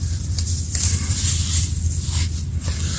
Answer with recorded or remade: recorded